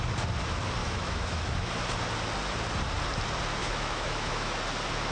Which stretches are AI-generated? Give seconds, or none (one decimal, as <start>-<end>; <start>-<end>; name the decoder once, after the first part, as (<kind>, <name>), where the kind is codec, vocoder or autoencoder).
0.8-1.7 (autoencoder, DAC-VAE); 3.6-4.6

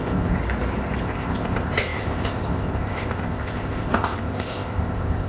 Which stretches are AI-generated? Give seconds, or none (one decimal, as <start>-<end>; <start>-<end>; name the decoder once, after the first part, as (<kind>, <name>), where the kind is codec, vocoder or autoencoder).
0.0-0.4 (codec, ZipCodec); 1.0-5.3

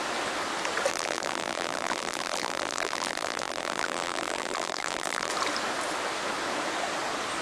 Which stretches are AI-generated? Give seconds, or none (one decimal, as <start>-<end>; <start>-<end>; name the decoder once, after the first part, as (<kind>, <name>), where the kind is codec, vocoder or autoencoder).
0.9-5.3 (vocoder, BigVGAN v2)

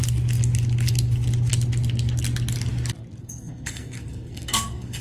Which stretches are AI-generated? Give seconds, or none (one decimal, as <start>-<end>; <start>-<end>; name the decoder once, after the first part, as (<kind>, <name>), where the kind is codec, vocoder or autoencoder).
3.2-5.0 (codec, SNAC)

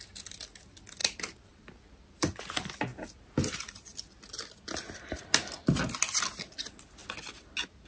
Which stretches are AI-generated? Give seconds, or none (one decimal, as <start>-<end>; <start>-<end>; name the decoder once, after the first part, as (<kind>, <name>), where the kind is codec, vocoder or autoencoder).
1.0-1.7 (vocoder, BigVGAN v2)